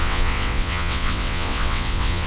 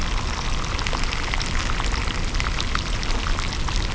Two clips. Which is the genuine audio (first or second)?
second